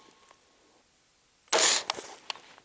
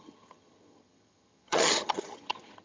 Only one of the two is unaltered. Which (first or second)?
first